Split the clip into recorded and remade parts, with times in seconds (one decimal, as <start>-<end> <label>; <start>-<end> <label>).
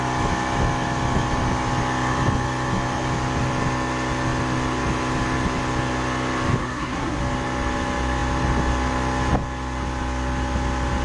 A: 0.0-6.6 recorded; 6.6-7.2 remade; 7.2-11.0 recorded